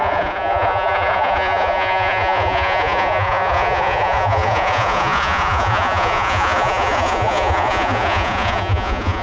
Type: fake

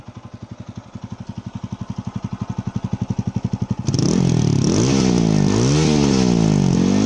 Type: real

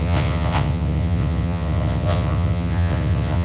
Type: fake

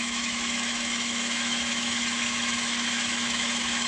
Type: fake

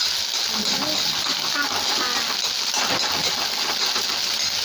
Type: real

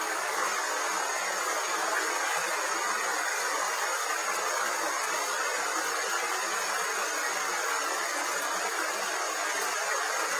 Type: real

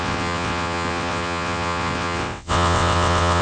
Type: fake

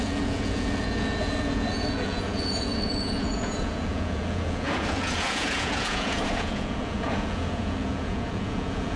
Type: fake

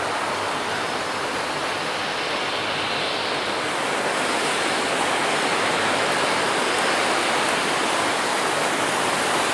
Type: real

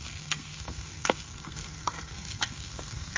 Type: fake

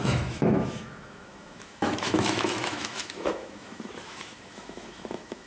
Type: fake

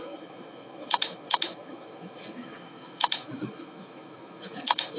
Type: fake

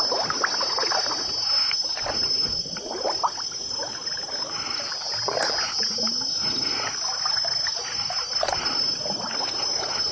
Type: real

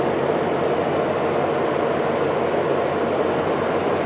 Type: real